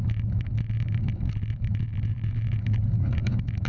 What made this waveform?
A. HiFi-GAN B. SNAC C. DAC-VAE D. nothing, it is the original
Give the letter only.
C